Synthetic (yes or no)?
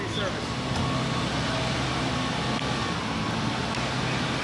no